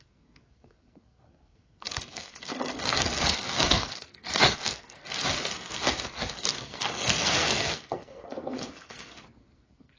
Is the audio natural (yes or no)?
no